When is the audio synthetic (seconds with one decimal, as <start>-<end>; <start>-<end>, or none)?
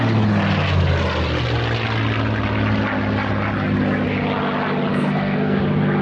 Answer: 4.9-5.6